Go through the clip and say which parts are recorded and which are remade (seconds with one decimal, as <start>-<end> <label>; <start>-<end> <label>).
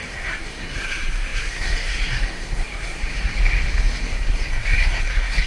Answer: 0.0-3.4 remade; 3.4-4.0 recorded; 4.0-5.5 remade